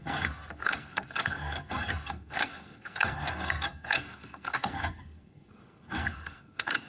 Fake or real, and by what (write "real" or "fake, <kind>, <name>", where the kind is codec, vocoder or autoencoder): fake, codec, SNAC